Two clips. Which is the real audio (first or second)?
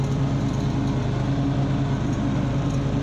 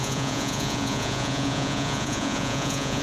first